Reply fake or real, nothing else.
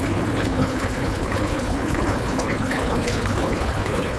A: fake